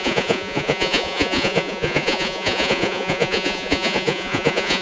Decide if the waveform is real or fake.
fake